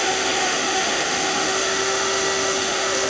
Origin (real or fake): fake